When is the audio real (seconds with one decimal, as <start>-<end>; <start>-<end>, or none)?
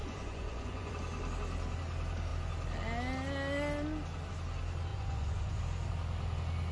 0.9-4.9; 5.6-6.7